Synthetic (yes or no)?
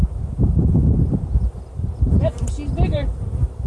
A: yes